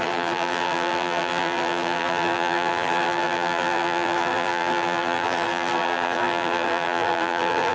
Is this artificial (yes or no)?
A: yes